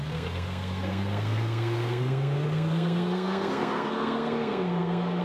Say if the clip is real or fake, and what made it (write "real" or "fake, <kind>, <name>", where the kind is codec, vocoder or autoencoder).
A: fake, codec, SNAC